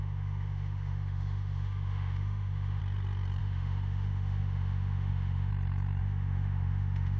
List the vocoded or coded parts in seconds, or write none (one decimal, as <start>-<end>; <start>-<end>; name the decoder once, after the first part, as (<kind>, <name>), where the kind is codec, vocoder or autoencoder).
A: 0.0-2.8 (autoencoder, DAC-VAE); 3.4-5.5; 6.0-7.2